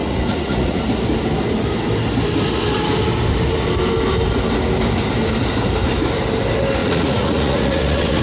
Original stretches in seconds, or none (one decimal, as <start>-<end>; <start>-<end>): 0.8-6.8